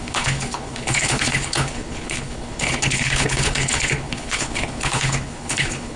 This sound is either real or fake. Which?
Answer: fake